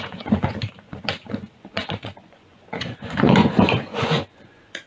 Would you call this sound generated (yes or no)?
yes